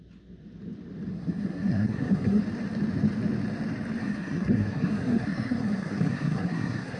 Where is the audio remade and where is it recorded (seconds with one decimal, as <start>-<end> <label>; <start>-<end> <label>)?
0.0-1.1 recorded; 1.1-2.4 remade; 2.4-4.0 recorded; 4.0-7.0 remade